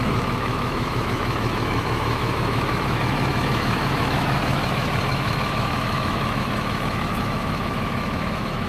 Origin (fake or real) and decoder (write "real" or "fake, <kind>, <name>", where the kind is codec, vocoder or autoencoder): fake, autoencoder, DAC-VAE